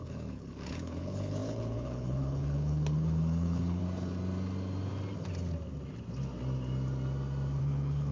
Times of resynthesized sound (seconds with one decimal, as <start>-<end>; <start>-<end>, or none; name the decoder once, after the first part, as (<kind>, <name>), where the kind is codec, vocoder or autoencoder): 0.0-3.8 (codec, HILCodec); 7.6-8.1